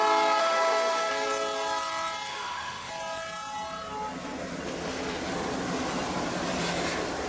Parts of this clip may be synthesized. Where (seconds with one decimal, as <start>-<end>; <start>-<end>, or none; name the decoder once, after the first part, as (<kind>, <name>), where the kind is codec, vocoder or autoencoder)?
0.4-1.1 (autoencoder, DAC-VAE); 2.3-2.9